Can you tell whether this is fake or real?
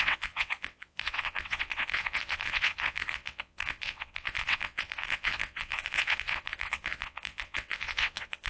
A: fake